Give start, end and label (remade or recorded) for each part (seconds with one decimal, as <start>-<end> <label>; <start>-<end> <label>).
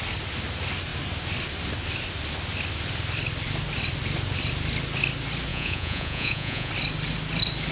0.0-5.5 recorded; 5.5-6.7 remade; 6.7-7.7 recorded